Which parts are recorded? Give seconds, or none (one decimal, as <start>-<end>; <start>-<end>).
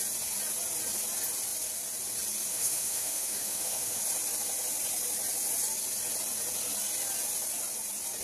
0.0-2.5; 4.0-8.2